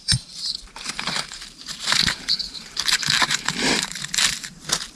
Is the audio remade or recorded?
remade